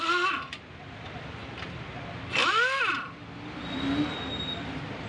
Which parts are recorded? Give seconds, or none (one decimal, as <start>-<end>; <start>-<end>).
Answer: 0.0-5.1